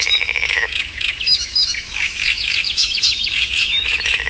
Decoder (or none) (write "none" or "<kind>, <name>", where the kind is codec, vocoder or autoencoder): autoencoder, DAC-VAE